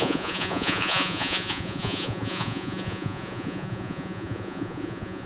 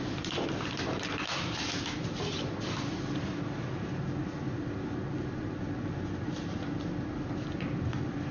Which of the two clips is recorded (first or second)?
second